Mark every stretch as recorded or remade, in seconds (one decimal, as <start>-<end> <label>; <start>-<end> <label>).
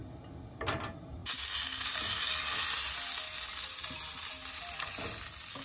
0.0-5.6 recorded